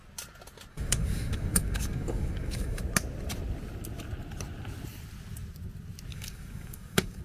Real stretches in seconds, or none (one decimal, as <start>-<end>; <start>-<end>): 0.0-0.7; 2.8-6.1